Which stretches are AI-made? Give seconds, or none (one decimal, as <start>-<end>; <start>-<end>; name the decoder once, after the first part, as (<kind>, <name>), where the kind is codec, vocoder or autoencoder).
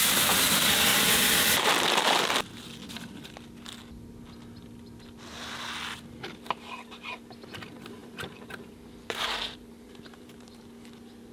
0.9-1.7 (vocoder, BigVGAN v2); 8.0-10.6